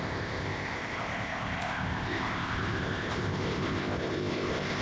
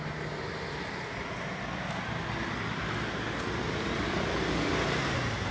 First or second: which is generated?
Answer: first